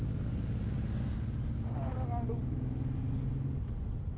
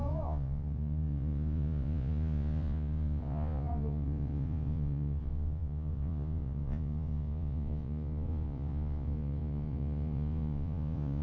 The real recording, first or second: first